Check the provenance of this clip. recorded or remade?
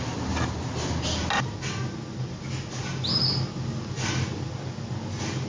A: recorded